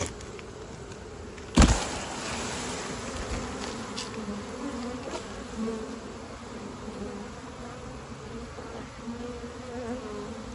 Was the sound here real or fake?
real